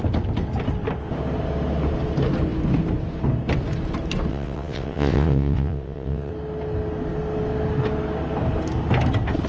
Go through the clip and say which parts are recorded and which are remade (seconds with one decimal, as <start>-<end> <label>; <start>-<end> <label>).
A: 0.0-4.3 recorded; 4.3-6.3 remade; 6.3-9.5 recorded